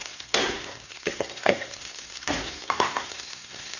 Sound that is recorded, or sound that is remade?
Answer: remade